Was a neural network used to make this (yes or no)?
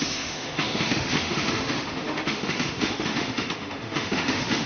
yes